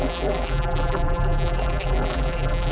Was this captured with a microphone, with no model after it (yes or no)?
no